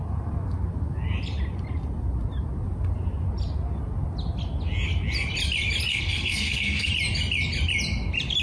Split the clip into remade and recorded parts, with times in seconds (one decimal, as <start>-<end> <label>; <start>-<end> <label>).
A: 0.0-5.9 recorded; 5.9-6.9 remade; 6.9-8.4 recorded